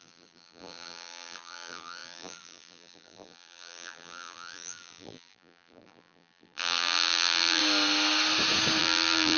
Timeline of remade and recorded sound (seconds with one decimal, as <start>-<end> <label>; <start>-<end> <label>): 0.0-7.6 remade; 7.6-8.8 recorded; 8.8-9.4 remade